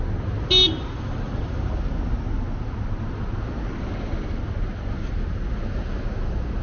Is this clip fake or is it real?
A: real